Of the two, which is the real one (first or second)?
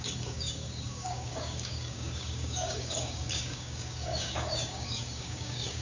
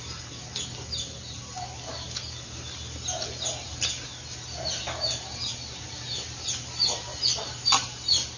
second